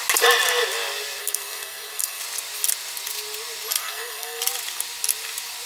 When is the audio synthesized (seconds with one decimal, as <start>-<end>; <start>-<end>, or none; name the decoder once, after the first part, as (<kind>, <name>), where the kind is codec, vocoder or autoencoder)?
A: 1.2-2.2 (codec, SNAC); 3.8-4.4

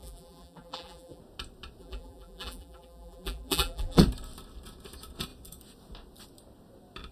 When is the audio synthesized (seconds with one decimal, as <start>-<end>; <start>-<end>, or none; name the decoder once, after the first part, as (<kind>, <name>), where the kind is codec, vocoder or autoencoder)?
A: 0.0-1.2 (vocoder, BigVGAN v2); 1.8-4.0

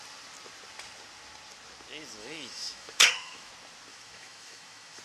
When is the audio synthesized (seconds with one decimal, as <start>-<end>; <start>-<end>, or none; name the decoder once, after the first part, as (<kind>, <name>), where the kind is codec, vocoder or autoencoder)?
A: 2.2-3.5 (autoencoder, DAC-VAE); 3.9-5.0

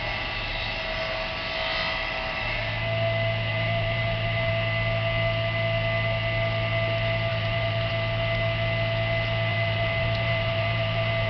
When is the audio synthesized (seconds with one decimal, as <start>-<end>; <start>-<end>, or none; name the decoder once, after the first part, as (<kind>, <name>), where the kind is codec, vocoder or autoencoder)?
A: 3.5-4.5 (vocoder, BigVGAN v2); 7.3-7.9; 9.5-11.3

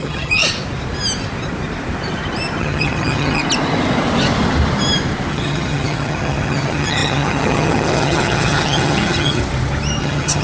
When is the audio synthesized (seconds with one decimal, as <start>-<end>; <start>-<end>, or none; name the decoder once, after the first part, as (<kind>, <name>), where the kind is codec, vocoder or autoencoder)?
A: 0.0-0.4 (vocoder, HiFi-GAN); 2.6-3.4; 5.3-9.4; 10.0-10.4